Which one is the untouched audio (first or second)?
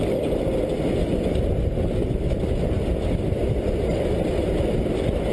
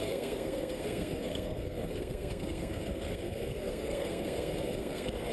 first